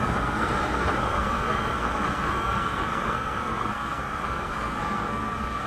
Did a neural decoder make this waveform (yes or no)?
yes